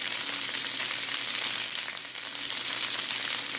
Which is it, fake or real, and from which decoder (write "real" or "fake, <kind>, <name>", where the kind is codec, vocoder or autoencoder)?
real